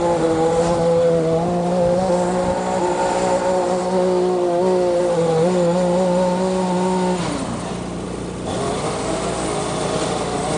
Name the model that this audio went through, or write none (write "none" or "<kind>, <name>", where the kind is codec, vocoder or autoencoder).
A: none